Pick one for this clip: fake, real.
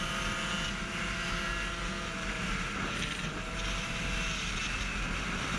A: real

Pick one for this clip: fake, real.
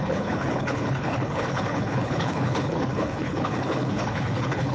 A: fake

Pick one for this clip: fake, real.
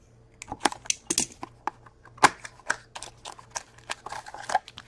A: real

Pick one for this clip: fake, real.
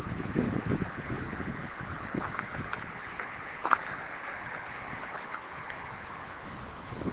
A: fake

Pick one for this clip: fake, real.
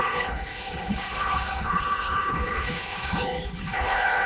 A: fake